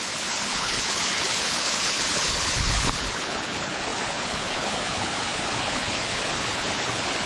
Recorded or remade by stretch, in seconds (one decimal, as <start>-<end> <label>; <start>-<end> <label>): 0.0-7.3 remade